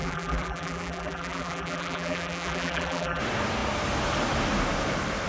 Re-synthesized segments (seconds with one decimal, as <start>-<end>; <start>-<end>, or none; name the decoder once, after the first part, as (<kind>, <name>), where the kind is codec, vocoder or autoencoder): 0.0-3.2 (vocoder, BigVGAN v2)